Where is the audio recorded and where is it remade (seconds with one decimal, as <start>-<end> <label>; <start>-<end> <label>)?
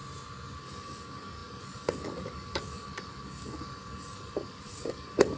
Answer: 0.0-0.6 recorded; 0.6-5.4 remade